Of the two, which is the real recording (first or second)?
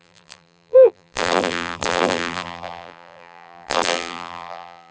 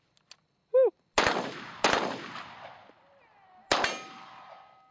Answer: second